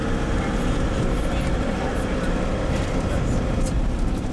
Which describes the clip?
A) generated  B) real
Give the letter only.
A